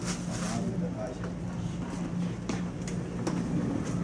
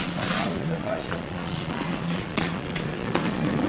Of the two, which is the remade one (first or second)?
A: second